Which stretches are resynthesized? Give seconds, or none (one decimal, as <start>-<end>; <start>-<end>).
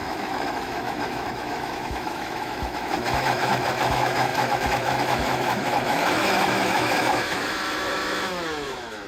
0.0-9.1